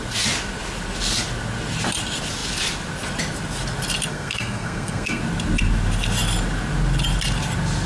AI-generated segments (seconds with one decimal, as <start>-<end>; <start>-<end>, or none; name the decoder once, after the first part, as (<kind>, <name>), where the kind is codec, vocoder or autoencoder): 4.1-5.2 (codec, SNAC)